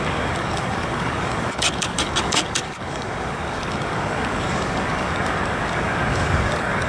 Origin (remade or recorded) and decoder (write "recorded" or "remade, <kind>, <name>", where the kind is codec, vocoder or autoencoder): remade, codec, DAC